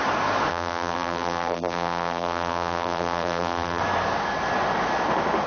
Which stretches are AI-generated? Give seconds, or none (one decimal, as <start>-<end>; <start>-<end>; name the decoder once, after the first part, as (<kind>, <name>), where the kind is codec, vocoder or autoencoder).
0.5-3.8 (vocoder, BigVGAN v2)